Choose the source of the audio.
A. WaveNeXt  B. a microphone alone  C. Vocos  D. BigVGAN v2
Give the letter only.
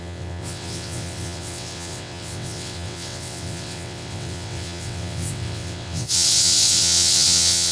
A